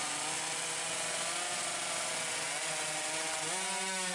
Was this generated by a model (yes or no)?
no